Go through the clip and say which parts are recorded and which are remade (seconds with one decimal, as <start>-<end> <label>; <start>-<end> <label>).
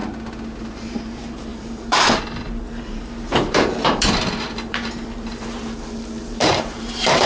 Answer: 0.0-0.6 recorded; 0.6-5.6 remade; 5.6-6.2 recorded; 6.2-7.3 remade